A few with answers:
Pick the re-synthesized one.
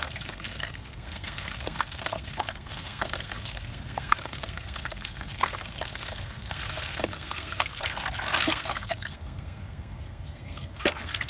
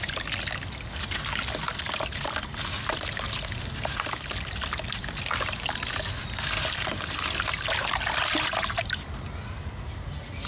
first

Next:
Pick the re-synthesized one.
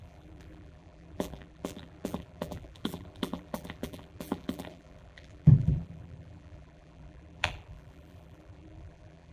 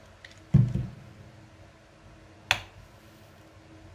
first